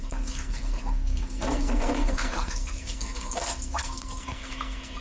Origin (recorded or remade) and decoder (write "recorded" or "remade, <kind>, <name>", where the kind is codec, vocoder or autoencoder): remade, codec, SNAC